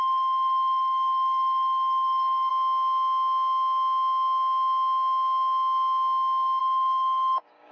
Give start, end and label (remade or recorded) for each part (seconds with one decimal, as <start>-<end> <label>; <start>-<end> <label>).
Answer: 0.0-2.5 remade; 2.5-6.6 recorded; 6.6-7.7 remade